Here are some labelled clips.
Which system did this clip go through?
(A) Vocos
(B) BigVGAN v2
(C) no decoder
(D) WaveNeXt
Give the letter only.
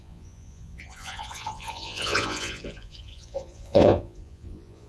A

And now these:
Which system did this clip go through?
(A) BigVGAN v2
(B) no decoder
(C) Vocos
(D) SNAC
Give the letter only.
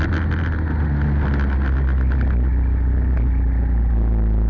B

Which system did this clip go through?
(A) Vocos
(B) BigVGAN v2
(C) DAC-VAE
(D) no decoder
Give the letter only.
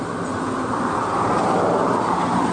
D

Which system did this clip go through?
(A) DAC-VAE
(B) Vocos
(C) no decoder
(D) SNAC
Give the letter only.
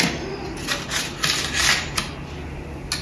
C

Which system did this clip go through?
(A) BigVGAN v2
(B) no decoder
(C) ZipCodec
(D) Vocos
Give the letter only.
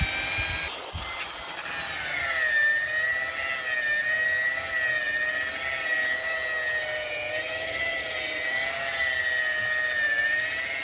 B